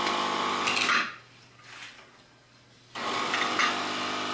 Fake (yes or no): no